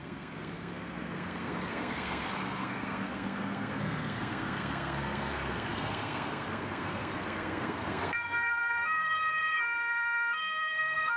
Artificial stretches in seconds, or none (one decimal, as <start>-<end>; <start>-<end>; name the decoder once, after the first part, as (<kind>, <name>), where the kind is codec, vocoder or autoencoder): 0.0-11.2 (codec, SNAC)